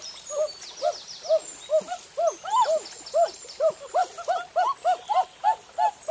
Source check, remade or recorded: recorded